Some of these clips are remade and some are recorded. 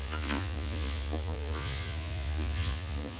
remade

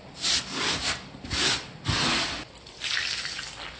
recorded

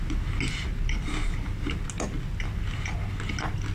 recorded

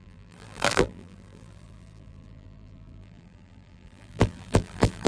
remade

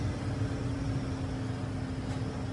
recorded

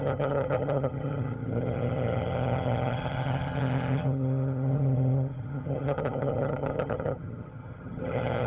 remade